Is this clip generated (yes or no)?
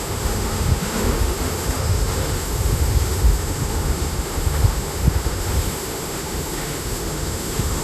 yes